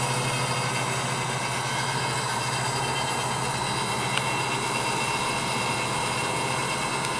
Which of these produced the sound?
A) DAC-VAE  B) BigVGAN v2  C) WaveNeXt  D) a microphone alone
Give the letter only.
D